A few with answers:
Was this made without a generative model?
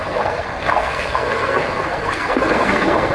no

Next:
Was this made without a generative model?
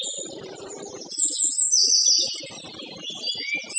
yes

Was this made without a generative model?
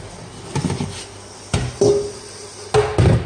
yes